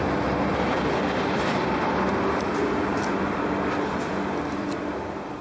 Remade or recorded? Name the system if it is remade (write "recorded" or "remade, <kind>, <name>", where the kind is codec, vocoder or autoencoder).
recorded